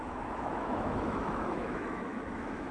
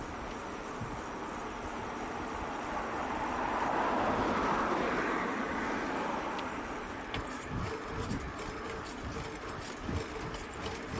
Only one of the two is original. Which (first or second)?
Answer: second